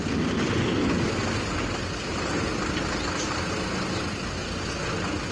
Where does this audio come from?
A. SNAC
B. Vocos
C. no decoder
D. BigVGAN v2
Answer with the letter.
C